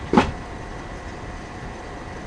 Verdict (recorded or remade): remade